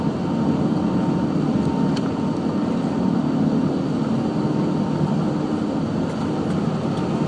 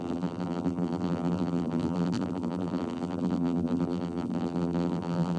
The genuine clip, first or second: first